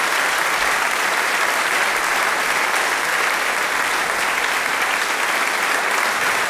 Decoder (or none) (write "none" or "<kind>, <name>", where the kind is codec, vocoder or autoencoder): none